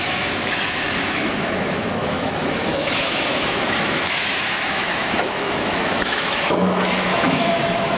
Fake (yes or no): yes